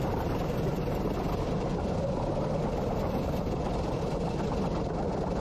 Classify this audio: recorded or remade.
recorded